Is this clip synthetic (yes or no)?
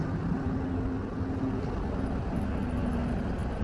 no